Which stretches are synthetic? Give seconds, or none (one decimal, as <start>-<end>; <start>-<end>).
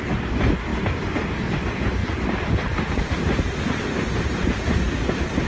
none